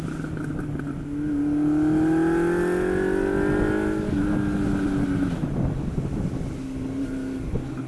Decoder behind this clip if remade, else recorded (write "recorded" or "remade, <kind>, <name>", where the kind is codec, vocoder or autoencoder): recorded